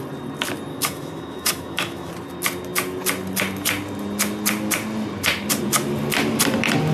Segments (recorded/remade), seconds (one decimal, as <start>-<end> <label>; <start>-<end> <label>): 0.0-0.7 recorded; 0.7-2.1 remade; 2.1-6.9 recorded